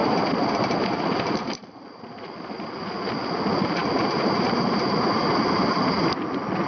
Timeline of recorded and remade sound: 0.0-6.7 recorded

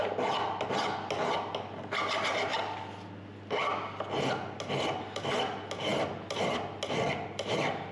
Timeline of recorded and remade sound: 0.0-7.9 recorded

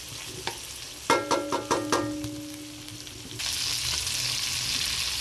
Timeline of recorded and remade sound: 0.0-5.2 recorded

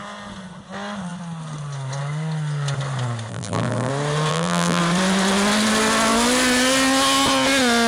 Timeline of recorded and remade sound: 0.0-3.3 recorded; 3.3-3.9 remade; 3.9-4.3 recorded; 4.3-4.8 remade; 4.8-7.9 recorded